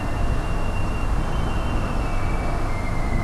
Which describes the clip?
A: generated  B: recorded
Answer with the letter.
B